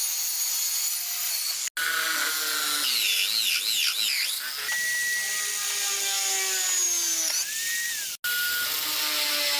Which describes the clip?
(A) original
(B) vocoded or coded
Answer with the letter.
A